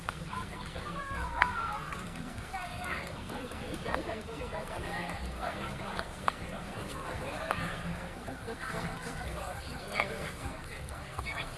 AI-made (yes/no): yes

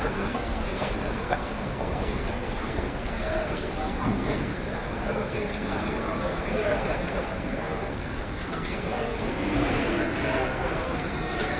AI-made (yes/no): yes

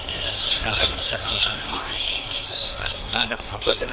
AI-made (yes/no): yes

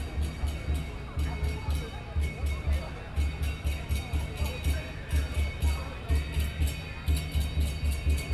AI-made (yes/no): no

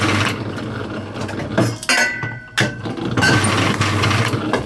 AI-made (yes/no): no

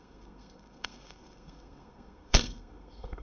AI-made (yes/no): yes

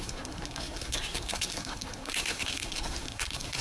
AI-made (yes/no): yes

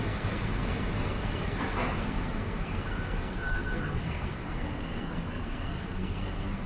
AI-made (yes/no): yes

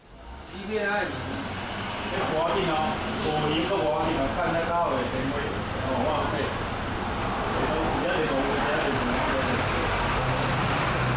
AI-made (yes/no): no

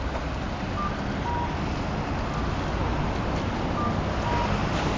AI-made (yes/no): no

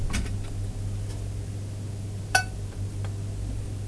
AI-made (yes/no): no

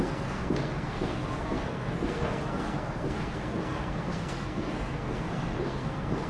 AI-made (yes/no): yes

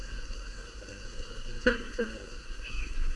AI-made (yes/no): yes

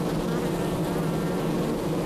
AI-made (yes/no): no